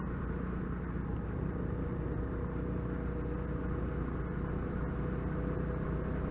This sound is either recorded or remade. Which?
recorded